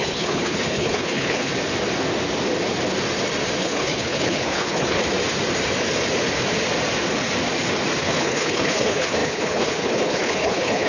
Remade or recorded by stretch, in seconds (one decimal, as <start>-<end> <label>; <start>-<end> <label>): 0.0-1.5 remade; 1.5-3.6 recorded; 3.6-5.0 remade; 5.0-8.0 recorded; 8.0-10.9 remade